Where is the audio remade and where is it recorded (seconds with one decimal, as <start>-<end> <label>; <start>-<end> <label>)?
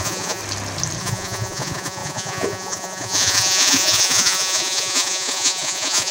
0.0-0.4 remade; 0.4-1.0 recorded; 1.0-6.1 remade